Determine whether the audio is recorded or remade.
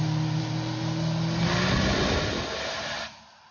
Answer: recorded